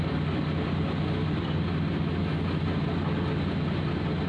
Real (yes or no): yes